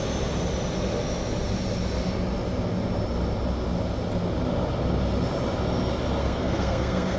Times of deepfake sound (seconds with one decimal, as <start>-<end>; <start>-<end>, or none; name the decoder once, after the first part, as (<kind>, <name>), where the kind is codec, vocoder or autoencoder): 6.2-7.2 (codec, SNAC)